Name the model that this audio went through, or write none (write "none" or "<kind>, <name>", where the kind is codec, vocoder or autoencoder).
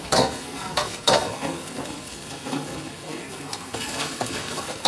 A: codec, SNAC